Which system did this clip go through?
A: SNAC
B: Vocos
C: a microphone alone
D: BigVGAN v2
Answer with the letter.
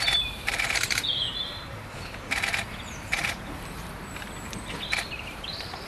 D